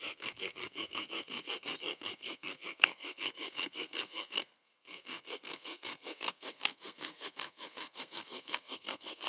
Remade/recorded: remade